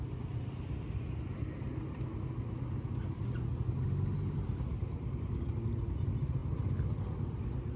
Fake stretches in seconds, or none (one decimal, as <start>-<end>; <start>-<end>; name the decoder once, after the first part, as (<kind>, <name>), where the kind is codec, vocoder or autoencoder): none